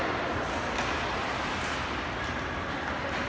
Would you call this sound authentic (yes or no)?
yes